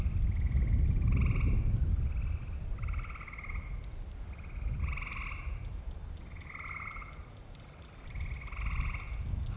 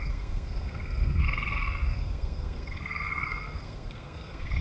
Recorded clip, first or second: first